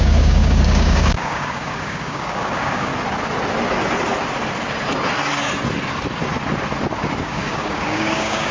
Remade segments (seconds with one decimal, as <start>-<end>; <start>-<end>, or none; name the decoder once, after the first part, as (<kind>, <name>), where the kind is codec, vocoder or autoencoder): 0.0-2.9 (codec, DAC); 7.2-8.5